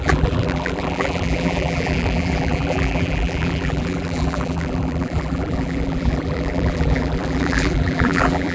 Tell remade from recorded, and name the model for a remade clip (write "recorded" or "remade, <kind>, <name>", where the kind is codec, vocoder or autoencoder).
remade, vocoder, BigVGAN v2